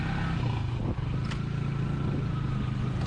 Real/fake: real